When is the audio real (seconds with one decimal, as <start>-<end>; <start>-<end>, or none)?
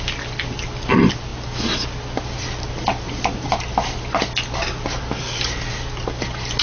0.0-6.6